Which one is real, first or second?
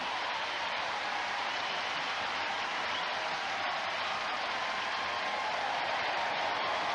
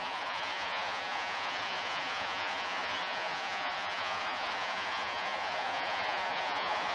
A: first